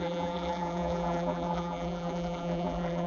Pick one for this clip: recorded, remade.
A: remade